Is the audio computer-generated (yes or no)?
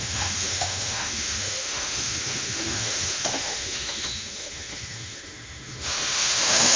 yes